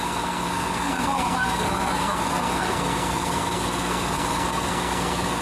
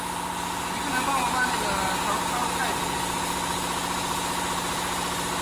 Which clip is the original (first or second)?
second